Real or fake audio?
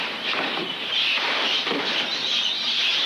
fake